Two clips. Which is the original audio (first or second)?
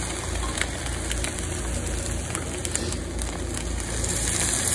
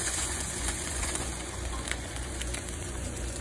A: first